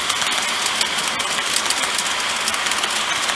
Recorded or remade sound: recorded